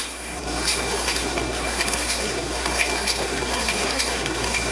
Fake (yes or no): yes